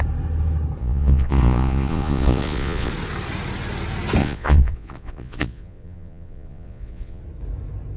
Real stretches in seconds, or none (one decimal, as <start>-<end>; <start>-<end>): 0.0-0.8; 2.9-4.2; 7.2-8.0